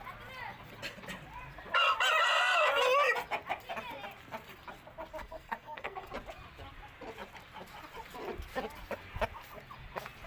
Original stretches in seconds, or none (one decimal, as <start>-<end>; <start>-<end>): 0.0-5.2; 6.1-10.3